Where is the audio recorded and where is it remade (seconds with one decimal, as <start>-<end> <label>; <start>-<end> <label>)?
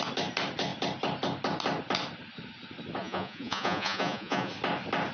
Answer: 0.0-3.0 recorded; 3.0-4.5 remade; 4.5-5.1 recorded